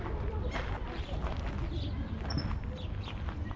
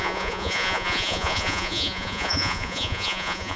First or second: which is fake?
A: second